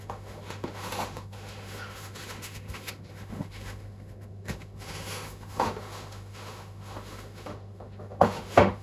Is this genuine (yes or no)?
no